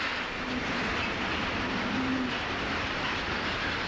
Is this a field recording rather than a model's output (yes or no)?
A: yes